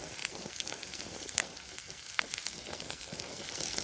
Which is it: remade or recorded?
remade